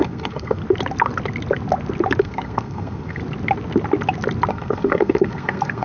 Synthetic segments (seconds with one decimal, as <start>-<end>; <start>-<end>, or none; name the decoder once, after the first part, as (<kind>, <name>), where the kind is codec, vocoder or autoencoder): 0.0-0.6 (codec, SNAC); 2.2-3.2; 4.5-5.8